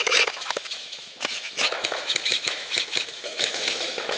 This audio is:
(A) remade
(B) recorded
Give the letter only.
A